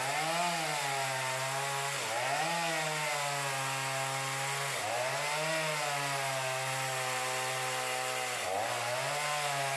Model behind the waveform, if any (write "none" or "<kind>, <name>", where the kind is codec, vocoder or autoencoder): none